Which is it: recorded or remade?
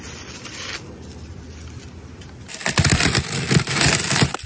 recorded